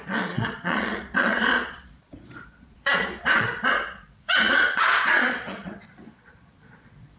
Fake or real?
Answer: fake